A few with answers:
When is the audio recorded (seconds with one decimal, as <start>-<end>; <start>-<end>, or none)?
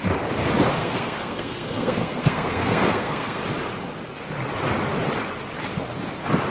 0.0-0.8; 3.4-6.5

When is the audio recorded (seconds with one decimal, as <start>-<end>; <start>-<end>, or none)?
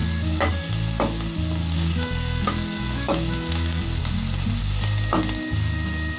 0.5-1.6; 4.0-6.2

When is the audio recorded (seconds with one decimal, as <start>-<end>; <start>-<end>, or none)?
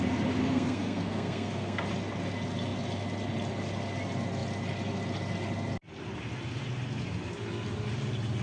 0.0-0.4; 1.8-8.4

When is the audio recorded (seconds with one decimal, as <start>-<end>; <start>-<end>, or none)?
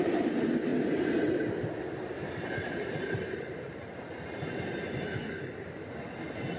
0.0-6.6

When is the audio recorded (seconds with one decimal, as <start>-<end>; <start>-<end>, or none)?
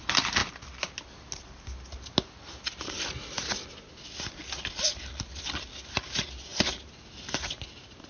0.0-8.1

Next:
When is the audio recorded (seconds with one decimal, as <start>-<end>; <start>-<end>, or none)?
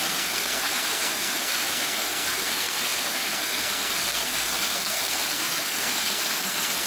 none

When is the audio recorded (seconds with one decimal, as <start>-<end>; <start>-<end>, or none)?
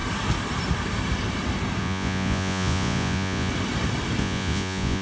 0.0-1.8; 3.5-4.2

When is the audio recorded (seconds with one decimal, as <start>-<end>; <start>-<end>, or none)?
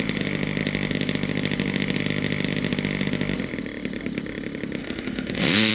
0.0-4.8